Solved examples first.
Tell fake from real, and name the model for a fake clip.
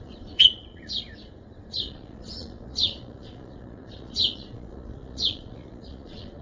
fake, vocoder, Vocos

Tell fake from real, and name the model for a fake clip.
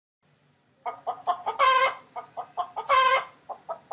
real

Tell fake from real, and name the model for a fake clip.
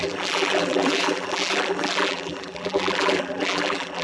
fake, vocoder, BigVGAN v2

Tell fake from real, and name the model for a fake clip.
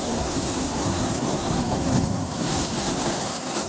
fake, codec, SNAC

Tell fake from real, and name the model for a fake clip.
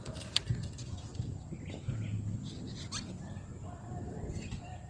real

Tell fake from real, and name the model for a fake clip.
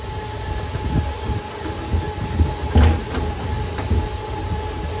real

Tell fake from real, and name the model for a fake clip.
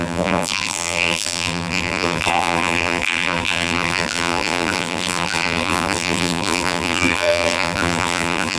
fake, vocoder, BigVGAN v2